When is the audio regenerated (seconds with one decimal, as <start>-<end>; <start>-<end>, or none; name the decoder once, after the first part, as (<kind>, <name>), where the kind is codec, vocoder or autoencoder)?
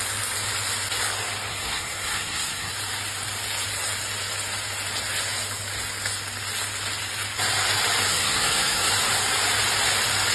1.5-2.7 (codec, SNAC); 8.1-8.9